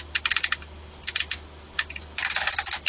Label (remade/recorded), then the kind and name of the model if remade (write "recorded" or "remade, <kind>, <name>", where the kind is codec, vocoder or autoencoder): recorded